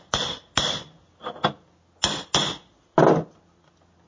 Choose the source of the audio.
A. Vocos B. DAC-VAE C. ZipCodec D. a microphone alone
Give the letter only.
D